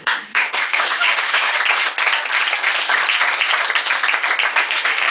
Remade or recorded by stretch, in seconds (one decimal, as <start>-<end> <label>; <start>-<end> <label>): 0.0-1.5 remade; 1.5-4.6 recorded; 4.6-5.1 remade